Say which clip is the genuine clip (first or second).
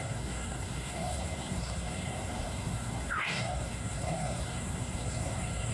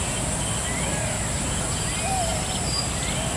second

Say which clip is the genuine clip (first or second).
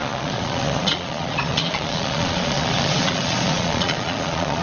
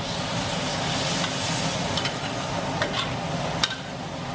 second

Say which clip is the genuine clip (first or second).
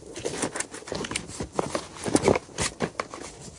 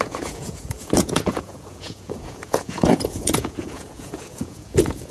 first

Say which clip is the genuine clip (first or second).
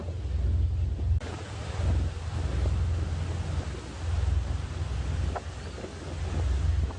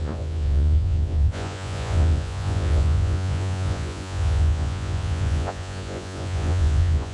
first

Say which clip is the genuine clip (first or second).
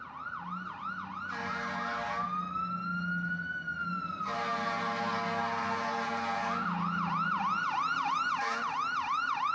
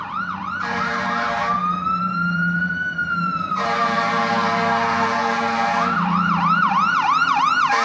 first